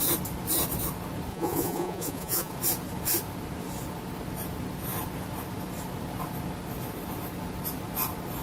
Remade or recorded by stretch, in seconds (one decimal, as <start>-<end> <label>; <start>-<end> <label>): 0.0-1.3 recorded; 1.3-2.5 remade; 2.5-8.4 recorded